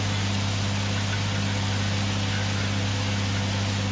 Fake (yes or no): no